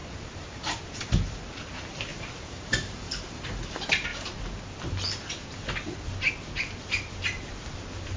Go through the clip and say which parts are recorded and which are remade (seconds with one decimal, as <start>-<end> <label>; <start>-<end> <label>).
0.0-0.8 remade; 0.8-2.1 recorded; 2.1-3.1 remade; 3.1-8.2 recorded